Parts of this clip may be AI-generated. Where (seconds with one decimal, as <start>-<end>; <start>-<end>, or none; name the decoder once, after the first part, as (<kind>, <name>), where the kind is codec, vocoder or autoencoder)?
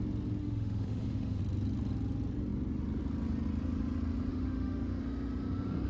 0.4-1.4 (autoencoder, DAC-VAE); 4.3-5.0